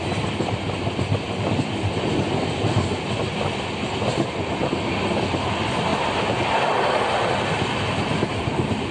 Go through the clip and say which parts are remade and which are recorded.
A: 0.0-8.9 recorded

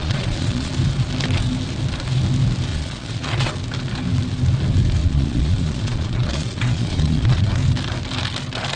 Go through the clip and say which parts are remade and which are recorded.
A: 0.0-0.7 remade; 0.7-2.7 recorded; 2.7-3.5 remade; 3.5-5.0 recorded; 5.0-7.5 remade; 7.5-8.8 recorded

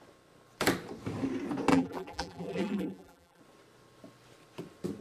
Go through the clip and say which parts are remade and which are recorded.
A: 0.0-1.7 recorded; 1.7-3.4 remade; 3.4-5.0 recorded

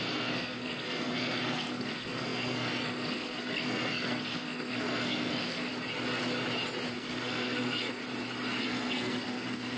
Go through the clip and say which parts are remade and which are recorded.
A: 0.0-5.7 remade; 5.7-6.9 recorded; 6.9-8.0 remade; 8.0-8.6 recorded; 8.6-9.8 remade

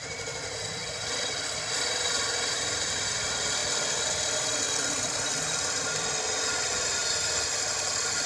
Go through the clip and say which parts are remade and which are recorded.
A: 0.0-7.0 remade; 7.0-8.3 recorded